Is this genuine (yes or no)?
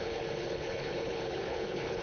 no